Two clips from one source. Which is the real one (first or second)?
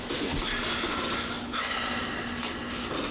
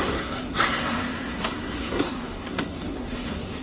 first